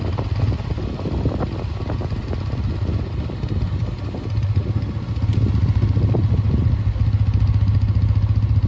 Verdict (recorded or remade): recorded